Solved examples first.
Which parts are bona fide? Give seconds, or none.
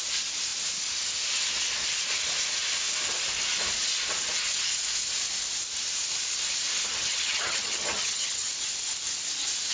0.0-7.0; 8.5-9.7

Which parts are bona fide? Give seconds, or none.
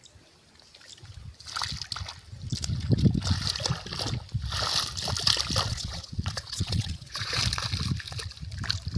0.0-5.7; 7.4-9.0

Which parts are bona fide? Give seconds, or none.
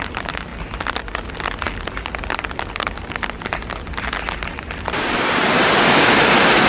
0.5-4.5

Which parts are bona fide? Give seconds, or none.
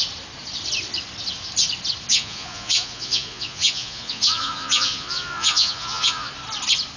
0.0-2.1; 6.3-7.0